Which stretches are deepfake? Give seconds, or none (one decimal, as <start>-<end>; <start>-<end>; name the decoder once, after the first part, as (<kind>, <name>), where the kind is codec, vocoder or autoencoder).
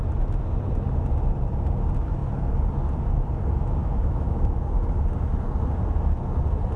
3.8-4.5 (autoencoder, DAC-VAE)